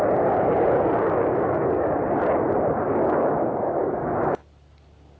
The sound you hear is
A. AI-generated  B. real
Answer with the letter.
B